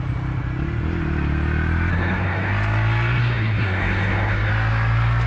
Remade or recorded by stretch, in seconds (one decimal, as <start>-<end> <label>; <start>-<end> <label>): 0.0-1.9 recorded; 1.9-2.5 remade; 2.5-3.2 recorded; 3.2-4.5 remade; 4.5-5.3 recorded